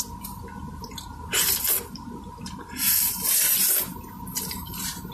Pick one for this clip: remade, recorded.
recorded